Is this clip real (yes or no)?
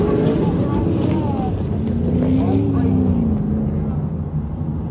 yes